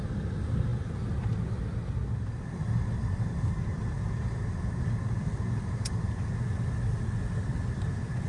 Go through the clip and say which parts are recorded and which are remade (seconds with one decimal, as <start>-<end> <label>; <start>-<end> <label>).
0.0-8.3 recorded